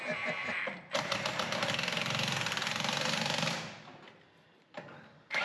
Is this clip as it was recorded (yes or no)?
yes